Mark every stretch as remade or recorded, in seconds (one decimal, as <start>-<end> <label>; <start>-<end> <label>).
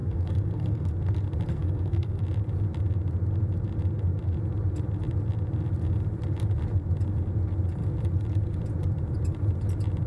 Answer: 0.0-0.9 remade; 0.9-1.5 recorded; 1.5-2.2 remade; 2.2-10.1 recorded